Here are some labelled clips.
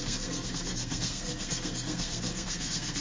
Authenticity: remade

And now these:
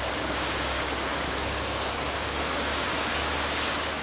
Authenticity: remade